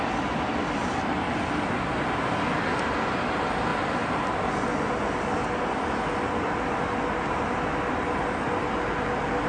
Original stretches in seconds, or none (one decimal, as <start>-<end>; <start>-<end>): 0.0-9.5